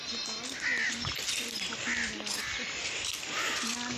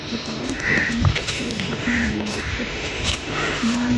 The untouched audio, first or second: first